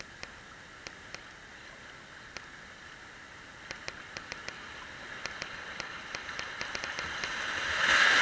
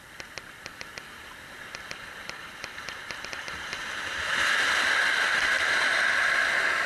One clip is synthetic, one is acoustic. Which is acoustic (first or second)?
first